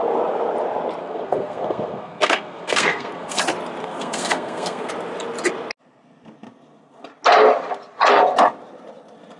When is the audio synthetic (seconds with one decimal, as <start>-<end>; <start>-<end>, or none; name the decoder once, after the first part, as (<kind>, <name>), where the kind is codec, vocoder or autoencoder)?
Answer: 1.0-3.4 (codec, SNAC); 3.8-4.9